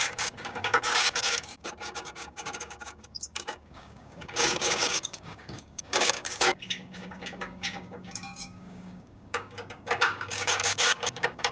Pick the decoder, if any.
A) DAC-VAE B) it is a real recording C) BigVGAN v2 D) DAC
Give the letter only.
D